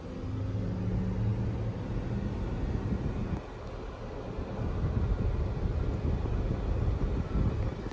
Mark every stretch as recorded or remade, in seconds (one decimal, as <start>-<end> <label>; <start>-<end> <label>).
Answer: 0.0-7.9 recorded